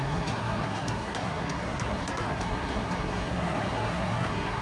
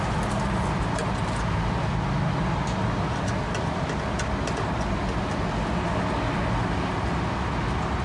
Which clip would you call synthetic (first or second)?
first